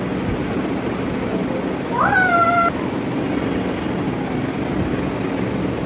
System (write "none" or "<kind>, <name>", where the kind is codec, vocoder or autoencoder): none